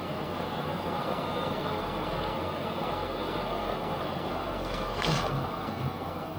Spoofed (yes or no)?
yes